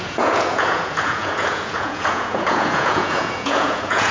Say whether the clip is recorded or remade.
remade